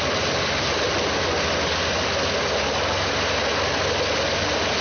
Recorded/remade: recorded